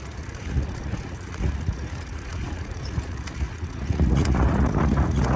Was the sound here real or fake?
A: fake